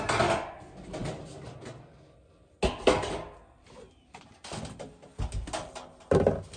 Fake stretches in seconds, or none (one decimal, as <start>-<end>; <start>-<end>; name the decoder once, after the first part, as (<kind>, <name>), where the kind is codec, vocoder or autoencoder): none